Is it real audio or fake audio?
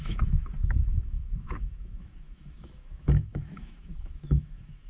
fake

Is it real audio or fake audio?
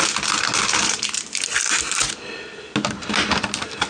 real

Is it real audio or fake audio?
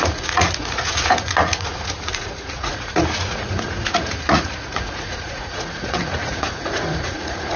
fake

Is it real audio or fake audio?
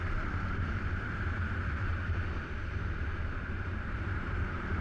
fake